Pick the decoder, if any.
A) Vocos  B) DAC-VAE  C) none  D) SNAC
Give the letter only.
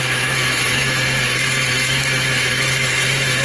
B